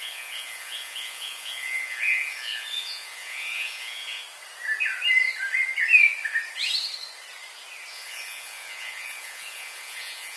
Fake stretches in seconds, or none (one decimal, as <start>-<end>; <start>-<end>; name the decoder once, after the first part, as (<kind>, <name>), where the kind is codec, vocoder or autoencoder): 0.0-4.2 (vocoder, Vocos); 7.9-10.4

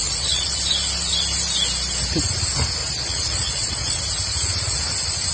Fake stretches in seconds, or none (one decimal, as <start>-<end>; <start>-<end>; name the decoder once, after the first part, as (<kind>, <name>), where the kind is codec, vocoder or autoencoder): 0.0-0.6 (vocoder, Vocos); 2.8-4.0

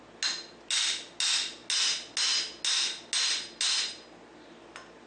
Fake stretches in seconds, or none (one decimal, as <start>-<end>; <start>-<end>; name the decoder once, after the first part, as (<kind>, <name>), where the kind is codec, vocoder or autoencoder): none